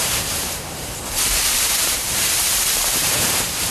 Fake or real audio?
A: fake